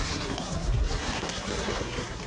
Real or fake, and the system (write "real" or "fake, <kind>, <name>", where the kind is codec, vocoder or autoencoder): fake, codec, SNAC